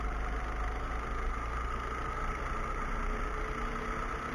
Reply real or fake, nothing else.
real